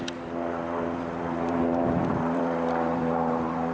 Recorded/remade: remade